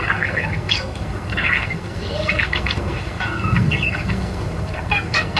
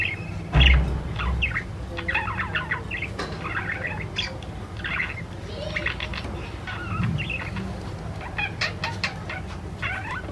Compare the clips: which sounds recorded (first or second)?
second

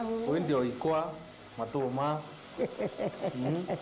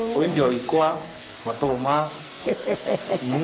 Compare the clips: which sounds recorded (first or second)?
first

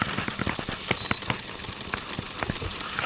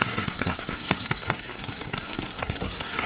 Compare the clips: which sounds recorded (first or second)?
first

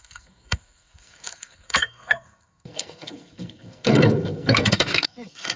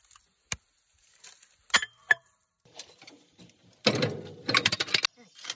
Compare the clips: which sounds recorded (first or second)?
second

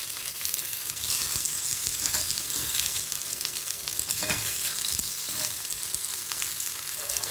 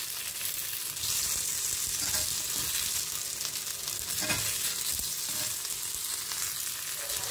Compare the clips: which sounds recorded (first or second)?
second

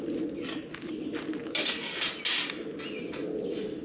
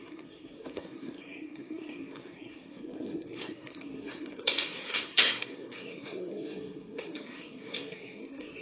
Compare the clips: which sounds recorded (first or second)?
first